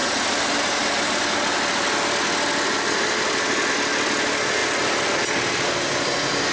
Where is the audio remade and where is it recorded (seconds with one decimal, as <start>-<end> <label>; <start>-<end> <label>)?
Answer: 0.0-6.5 recorded